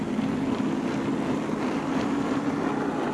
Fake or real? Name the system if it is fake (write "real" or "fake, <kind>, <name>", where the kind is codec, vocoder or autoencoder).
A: real